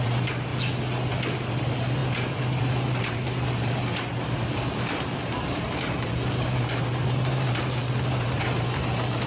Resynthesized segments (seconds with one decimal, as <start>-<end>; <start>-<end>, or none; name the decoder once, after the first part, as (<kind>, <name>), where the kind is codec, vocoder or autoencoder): 0.0-0.5 (vocoder, BigVGAN v2); 1.5-9.3